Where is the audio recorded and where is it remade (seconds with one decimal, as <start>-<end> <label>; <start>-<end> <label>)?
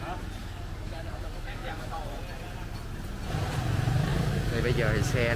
0.0-0.4 recorded; 0.4-2.0 remade; 2.0-4.1 recorded; 4.1-4.6 remade; 4.6-5.4 recorded